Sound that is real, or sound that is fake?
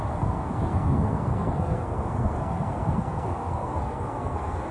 fake